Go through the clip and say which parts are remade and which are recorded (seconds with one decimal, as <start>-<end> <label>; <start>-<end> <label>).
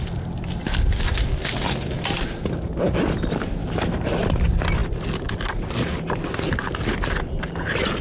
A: 0.0-8.0 recorded